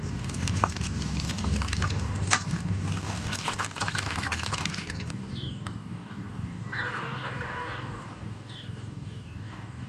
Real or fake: fake